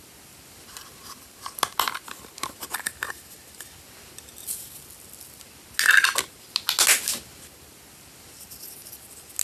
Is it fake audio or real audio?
real